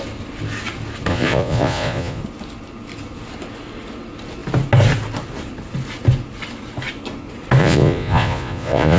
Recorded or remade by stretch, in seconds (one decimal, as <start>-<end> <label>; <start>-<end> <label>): 0.0-1.1 recorded; 1.1-2.2 remade; 2.2-7.6 recorded; 7.6-9.0 remade